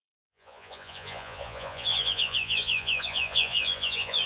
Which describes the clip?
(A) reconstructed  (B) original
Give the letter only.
A